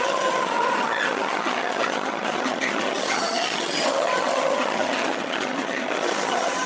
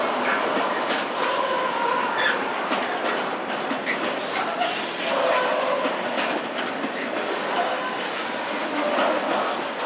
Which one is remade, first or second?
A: first